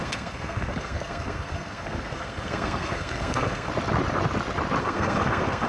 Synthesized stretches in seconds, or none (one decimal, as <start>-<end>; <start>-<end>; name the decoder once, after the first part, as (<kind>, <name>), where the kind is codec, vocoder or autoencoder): 0.0-3.7 (codec, SNAC); 4.8-5.7